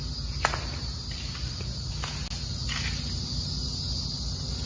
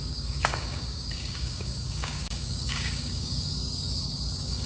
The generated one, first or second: second